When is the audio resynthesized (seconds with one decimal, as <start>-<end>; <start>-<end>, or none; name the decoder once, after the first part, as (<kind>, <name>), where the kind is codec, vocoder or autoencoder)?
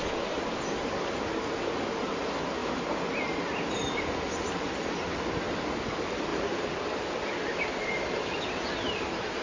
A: none